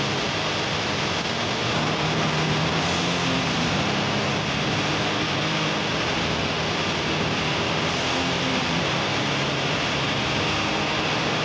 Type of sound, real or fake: real